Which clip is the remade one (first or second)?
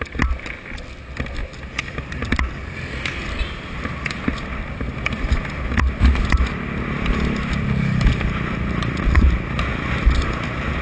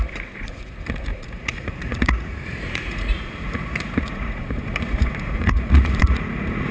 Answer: second